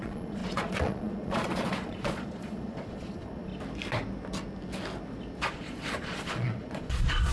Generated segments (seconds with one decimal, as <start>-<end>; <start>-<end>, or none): 0.0-3.5; 5.5-7.3